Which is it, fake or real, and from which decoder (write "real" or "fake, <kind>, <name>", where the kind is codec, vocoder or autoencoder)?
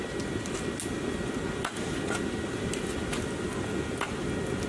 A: real